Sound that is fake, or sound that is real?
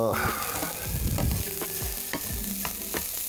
real